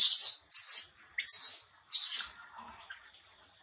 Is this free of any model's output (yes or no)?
yes